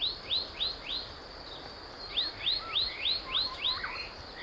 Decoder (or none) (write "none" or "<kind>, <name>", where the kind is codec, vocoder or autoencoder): none